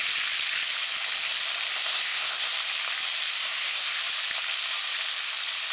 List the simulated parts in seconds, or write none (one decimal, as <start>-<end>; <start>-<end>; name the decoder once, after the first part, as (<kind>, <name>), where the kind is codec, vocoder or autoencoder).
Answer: 1.7-2.5 (codec, SNAC); 3.4-4.0